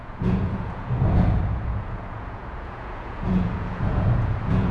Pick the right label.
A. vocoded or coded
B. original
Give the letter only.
A